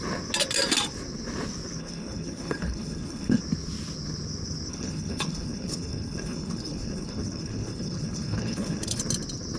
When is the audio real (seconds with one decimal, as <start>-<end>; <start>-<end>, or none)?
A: 0.0-1.8; 3.4-4.7; 9.0-9.6